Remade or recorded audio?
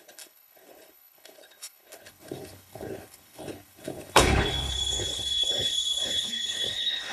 remade